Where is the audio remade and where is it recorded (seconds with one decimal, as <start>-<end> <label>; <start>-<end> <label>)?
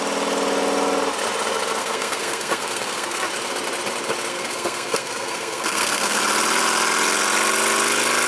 0.0-1.8 recorded; 1.8-3.3 remade; 3.3-4.3 recorded; 4.3-6.2 remade; 6.2-8.3 recorded